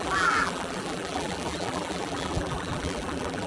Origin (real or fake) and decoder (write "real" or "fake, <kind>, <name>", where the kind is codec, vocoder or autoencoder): fake, vocoder, BigVGAN v2